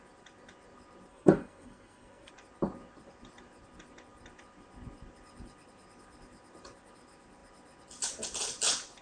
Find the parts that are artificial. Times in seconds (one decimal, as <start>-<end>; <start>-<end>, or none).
1.1-2.3